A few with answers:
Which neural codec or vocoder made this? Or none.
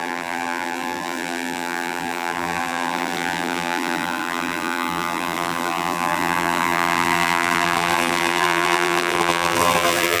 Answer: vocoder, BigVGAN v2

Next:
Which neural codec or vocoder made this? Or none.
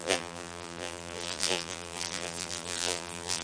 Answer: vocoder, BigVGAN v2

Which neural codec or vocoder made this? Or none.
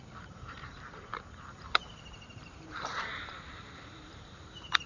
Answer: vocoder, BigVGAN v2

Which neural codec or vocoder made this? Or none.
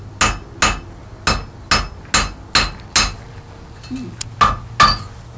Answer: none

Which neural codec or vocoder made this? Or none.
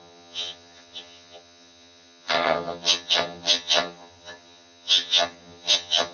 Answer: vocoder, HiFi-GAN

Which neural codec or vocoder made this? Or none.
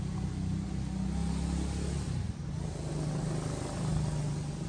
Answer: none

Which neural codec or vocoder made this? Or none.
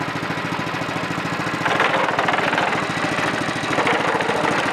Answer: none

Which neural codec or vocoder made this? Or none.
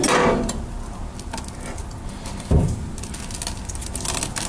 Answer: none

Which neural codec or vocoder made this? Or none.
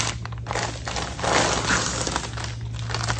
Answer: none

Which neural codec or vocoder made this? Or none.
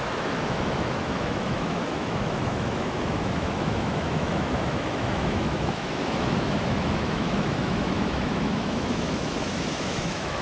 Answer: autoencoder, DAC-VAE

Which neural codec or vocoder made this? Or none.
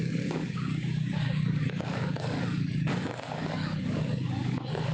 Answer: codec, DAC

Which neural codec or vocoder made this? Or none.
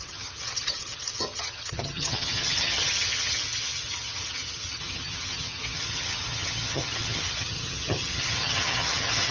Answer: vocoder, HiFi-GAN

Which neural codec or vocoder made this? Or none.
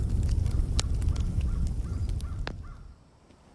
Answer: none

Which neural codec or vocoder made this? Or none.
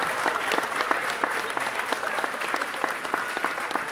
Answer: none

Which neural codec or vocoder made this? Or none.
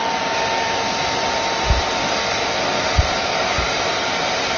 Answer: none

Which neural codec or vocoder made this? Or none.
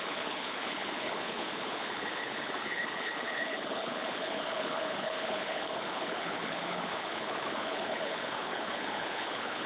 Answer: codec, HILCodec